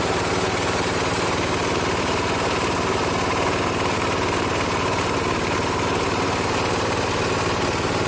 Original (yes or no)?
no